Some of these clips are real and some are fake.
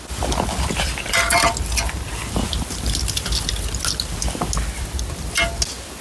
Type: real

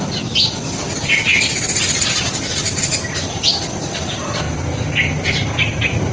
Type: real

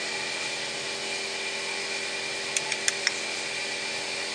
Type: real